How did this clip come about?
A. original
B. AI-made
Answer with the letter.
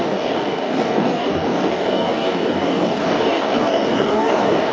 B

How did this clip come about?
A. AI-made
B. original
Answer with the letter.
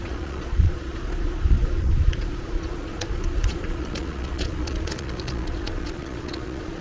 A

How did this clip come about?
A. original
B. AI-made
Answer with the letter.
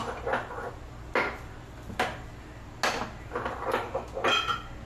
A